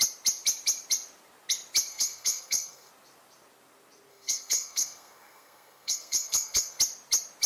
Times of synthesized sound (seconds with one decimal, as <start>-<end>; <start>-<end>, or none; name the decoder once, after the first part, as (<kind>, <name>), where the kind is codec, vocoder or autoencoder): 1.9-2.9 (codec, SNAC); 4.1-6.8